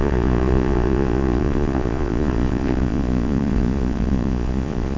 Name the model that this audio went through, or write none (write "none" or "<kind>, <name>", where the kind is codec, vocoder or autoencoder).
vocoder, Vocos